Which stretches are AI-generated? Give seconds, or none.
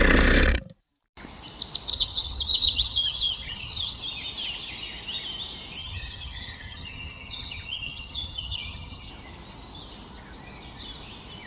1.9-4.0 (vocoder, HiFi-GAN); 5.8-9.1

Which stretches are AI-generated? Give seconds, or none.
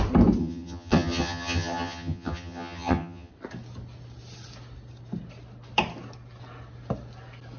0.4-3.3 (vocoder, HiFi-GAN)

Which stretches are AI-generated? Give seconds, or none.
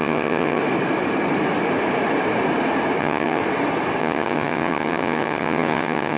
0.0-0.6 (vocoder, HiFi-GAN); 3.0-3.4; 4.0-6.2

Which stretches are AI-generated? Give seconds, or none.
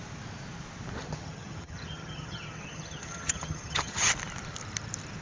1.0-4.1 (vocoder, HiFi-GAN)